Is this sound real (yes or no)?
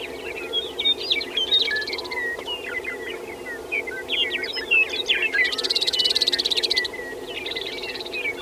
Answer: yes